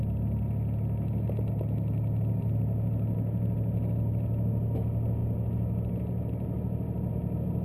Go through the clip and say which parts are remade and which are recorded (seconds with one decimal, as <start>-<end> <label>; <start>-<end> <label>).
0.0-7.6 recorded